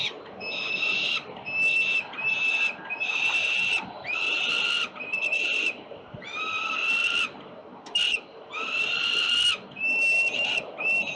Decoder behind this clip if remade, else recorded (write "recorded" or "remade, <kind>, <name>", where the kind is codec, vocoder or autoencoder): recorded